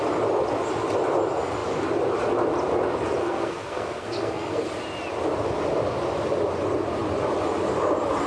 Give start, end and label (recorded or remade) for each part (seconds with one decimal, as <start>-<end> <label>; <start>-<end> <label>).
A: 0.0-3.2 recorded; 3.2-4.7 remade; 4.7-8.3 recorded